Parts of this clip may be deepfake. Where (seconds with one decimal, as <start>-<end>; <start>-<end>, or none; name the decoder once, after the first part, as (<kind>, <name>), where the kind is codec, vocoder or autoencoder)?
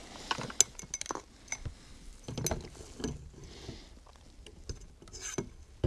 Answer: none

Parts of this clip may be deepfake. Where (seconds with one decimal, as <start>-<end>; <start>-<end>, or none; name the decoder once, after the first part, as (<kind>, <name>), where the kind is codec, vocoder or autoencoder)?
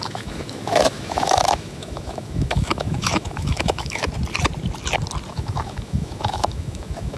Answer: 0.0-4.1 (autoencoder, DAC-VAE); 5.3-7.2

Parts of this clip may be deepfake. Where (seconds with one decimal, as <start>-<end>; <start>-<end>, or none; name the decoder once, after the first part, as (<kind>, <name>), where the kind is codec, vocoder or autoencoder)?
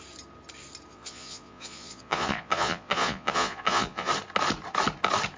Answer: 0.9-4.1 (vocoder, Vocos)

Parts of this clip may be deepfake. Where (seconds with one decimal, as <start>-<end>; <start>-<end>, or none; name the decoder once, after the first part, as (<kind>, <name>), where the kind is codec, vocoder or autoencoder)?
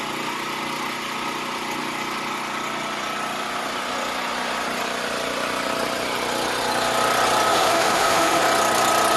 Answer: 7.5-8.4 (autoencoder, DAC-VAE)